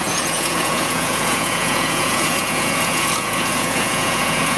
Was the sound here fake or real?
fake